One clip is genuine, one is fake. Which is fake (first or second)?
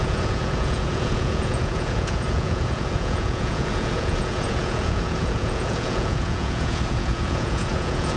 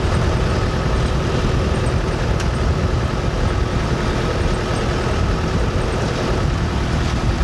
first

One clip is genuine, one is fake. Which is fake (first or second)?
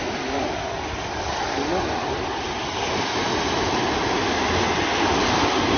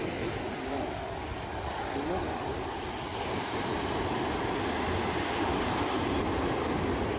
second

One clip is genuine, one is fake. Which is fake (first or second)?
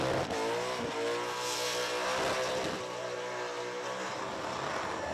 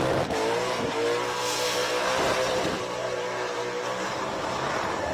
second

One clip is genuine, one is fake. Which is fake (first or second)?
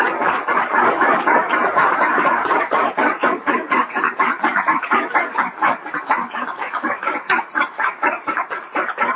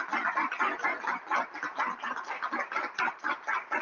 first